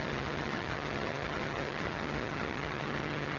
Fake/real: fake